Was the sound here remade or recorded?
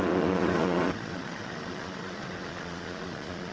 remade